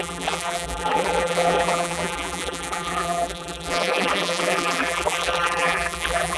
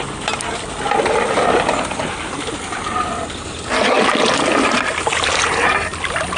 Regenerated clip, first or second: first